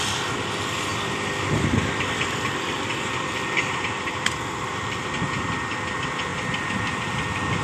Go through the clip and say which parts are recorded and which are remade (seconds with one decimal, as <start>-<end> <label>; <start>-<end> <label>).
0.0-0.9 recorded; 0.9-5.5 remade; 5.5-7.6 recorded